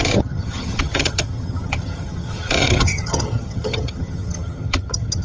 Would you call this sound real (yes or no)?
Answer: no